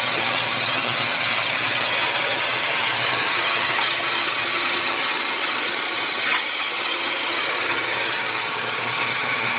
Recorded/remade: remade